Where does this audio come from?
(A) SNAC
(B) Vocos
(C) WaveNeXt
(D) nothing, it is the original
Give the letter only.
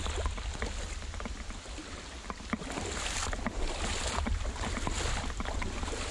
D